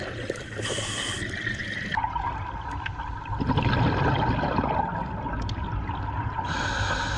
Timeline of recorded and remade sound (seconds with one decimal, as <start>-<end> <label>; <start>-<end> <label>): 0.0-7.2 recorded